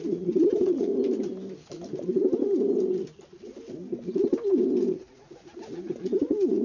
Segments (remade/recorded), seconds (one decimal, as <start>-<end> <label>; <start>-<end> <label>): 0.0-0.9 remade; 0.9-4.9 recorded; 4.9-6.6 remade